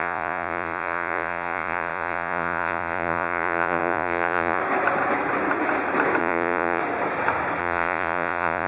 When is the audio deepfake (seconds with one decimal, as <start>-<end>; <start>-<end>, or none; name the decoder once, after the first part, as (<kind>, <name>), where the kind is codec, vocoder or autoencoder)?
0.0-4.6 (vocoder, Vocos); 6.2-6.8; 7.6-8.7